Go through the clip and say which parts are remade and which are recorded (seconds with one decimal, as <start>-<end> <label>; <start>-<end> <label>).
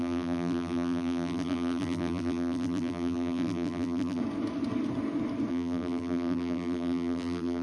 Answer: 0.0-4.2 remade; 4.2-5.5 recorded; 5.5-7.6 remade